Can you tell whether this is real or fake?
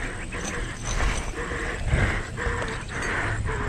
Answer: real